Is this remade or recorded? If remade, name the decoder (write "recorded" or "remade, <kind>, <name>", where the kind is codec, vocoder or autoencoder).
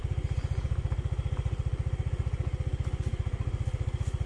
recorded